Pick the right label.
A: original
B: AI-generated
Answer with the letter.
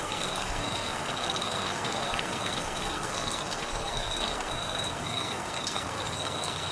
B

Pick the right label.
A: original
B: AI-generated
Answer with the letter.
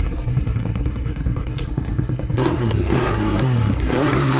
B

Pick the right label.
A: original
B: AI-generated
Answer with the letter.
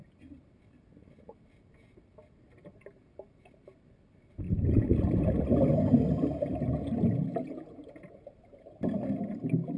A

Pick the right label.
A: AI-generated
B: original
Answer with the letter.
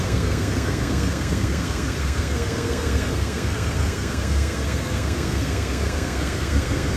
A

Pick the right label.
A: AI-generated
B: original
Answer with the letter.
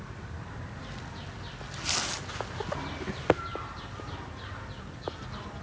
B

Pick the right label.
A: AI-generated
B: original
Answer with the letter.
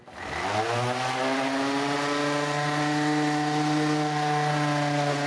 B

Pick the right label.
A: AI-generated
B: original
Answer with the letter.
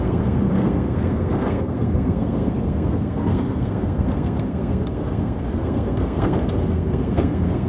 A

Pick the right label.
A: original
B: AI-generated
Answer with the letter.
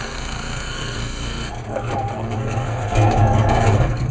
B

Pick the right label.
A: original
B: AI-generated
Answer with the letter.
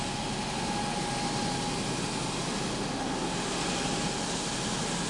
A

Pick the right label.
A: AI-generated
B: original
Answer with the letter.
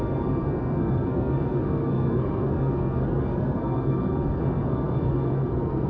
A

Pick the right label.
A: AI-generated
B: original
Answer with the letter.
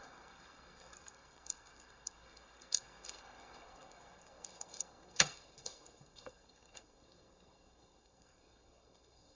A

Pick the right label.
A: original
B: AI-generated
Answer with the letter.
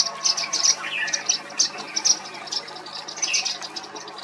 A